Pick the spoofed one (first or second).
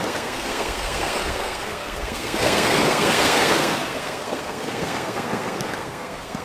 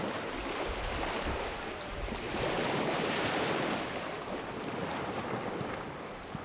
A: first